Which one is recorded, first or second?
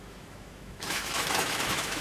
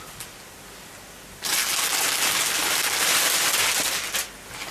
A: second